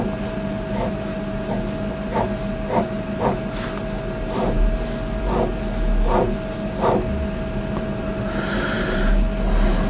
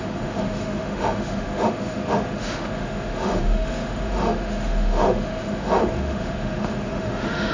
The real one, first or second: first